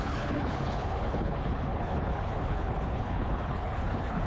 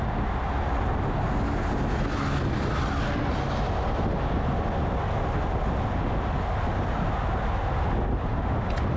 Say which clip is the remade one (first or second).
first